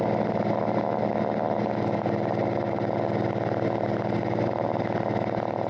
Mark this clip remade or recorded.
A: recorded